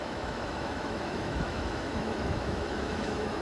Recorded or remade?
remade